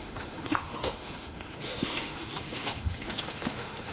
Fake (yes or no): yes